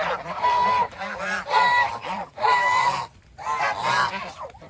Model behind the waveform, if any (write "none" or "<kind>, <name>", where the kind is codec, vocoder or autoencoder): vocoder, BigVGAN v2